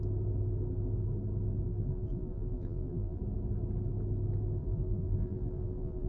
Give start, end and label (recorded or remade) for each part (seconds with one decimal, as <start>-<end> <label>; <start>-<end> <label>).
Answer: 0.0-1.7 recorded; 1.7-3.2 remade; 3.2-4.6 recorded; 4.6-6.1 remade